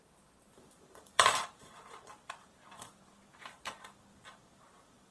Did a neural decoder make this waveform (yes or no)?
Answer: yes